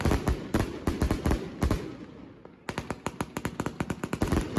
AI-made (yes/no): no